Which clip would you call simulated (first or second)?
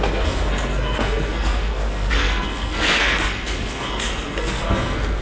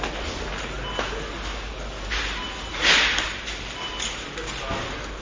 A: first